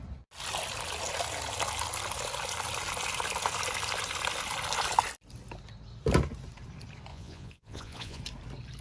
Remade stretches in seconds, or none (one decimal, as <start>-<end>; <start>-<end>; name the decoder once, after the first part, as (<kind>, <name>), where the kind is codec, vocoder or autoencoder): 7.1-8.2 (vocoder, Vocos)